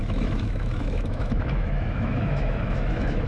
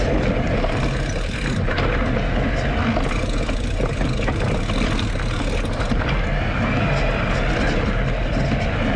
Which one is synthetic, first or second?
first